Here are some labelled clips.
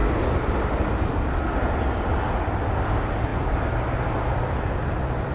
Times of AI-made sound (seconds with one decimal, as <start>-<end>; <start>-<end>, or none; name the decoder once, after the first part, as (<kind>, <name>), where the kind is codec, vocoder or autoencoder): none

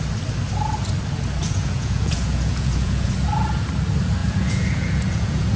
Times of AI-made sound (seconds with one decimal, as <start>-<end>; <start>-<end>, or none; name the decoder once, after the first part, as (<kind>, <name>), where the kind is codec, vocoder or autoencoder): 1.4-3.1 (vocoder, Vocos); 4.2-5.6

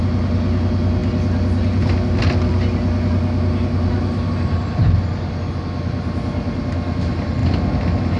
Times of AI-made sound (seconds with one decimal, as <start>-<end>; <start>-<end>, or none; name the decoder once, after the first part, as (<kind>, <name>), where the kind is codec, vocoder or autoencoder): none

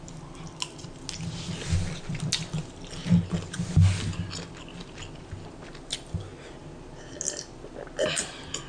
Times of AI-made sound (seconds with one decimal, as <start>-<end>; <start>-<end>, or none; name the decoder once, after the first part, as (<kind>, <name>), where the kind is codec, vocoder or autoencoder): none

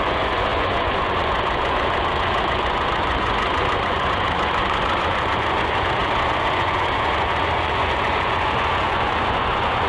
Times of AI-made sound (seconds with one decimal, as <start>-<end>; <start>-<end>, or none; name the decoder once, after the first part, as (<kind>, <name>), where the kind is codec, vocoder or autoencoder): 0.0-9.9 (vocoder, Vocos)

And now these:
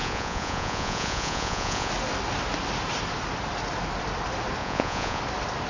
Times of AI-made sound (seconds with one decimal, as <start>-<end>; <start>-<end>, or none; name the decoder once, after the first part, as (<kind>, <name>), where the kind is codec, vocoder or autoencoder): 0.0-1.9 (vocoder, Vocos); 4.6-5.2